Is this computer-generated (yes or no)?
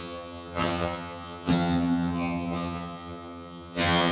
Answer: yes